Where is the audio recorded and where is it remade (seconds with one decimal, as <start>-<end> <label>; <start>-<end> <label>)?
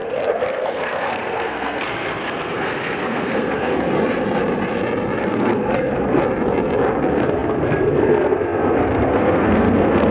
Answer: 0.0-3.9 remade; 3.9-5.2 recorded; 5.2-6.2 remade; 6.2-7.0 recorded; 7.0-10.1 remade